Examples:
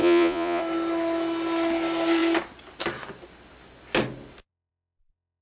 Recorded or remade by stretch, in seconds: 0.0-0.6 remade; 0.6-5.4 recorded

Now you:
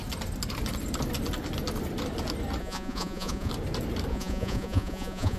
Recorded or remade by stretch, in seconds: 0.0-2.6 recorded; 2.6-3.5 remade; 3.5-4.1 recorded; 4.1-5.4 remade